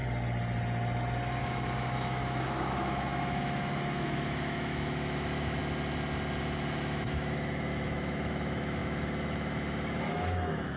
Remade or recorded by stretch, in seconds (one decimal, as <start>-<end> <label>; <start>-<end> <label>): 0.0-1.4 recorded; 1.4-5.6 remade; 5.6-6.4 recorded; 6.4-10.8 remade